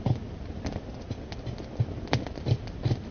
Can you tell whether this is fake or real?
real